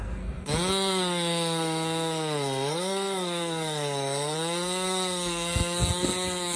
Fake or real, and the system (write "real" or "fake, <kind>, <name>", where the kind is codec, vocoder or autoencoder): fake, codec, SNAC